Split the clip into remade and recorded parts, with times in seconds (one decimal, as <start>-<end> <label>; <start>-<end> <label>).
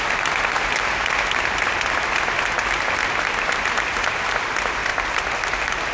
0.0-5.9 recorded